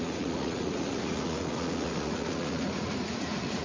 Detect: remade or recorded remade